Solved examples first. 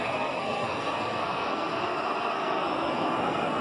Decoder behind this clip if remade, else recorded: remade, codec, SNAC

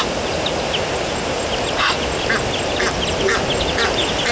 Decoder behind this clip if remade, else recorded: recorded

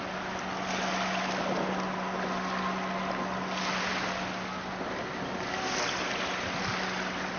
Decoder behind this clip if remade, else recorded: recorded